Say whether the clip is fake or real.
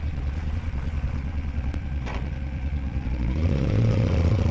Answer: fake